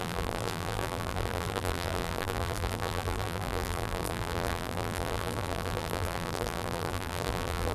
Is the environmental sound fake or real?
fake